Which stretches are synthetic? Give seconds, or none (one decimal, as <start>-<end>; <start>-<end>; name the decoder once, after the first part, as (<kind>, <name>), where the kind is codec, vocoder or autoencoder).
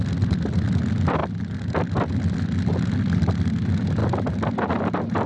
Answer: 1.2-2.1 (vocoder, BigVGAN v2); 4.0-4.6